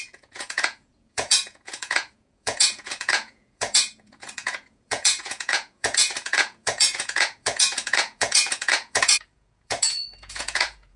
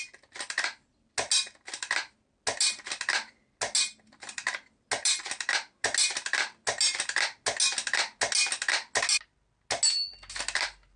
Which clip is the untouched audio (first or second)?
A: second